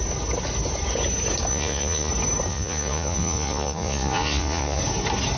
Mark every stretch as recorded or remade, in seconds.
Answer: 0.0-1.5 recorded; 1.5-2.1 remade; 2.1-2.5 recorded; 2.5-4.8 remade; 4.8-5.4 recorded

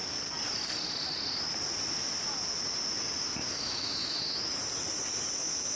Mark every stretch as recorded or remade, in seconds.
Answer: 0.0-3.5 recorded; 3.5-4.5 remade; 4.5-5.3 recorded; 5.3-5.8 remade

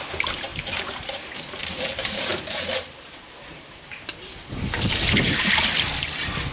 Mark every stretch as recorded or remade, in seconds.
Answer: 0.0-0.5 recorded; 0.5-1.2 remade; 1.2-1.6 recorded; 1.6-5.5 remade; 5.5-6.5 recorded

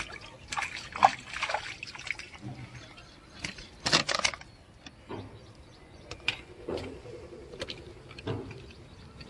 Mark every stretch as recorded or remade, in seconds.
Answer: 0.0-5.7 recorded; 5.7-7.1 remade; 7.1-9.3 recorded

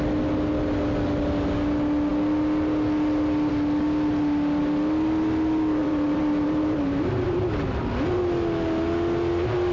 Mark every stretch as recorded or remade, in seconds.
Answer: 0.0-5.8 recorded; 5.8-7.2 remade; 7.2-9.7 recorded

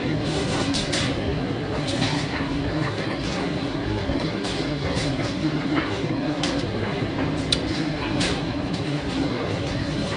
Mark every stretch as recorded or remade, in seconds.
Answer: 0.0-7.1 remade; 7.1-7.7 recorded; 7.7-10.2 remade

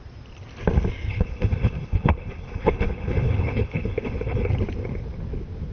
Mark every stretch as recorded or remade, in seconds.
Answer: 0.0-1.1 recorded; 1.1-4.5 remade; 4.5-5.7 recorded